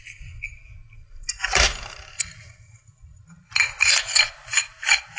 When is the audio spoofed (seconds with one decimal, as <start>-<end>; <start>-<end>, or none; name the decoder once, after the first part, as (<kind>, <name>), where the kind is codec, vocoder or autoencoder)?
1.0-2.2 (vocoder, BigVGAN v2); 3.1-4.0

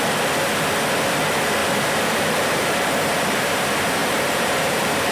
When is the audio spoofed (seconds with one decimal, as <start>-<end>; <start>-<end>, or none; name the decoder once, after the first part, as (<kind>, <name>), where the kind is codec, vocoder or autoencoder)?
1.6-3.6 (vocoder, BigVGAN v2); 4.0-5.1

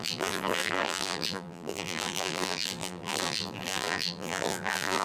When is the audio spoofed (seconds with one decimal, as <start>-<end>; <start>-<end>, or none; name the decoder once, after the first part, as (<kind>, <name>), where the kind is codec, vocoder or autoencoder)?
0.0-5.0 (vocoder, BigVGAN v2)